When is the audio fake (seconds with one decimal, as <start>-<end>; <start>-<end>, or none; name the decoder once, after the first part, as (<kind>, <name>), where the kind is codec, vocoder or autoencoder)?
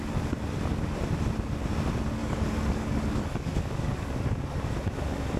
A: 2.2-4.1 (codec, DAC)